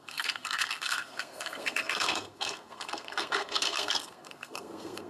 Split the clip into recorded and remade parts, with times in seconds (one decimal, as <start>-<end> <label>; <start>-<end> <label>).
0.0-5.1 remade

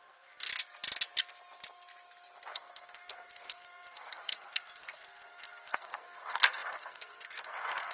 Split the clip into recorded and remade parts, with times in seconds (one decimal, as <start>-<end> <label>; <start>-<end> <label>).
0.0-0.5 remade; 0.5-2.5 recorded; 2.5-7.9 remade